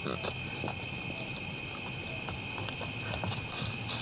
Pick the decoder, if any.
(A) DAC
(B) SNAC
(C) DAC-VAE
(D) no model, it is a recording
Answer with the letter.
D